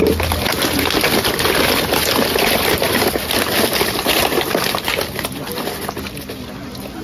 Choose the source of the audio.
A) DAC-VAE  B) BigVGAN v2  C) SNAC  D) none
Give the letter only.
D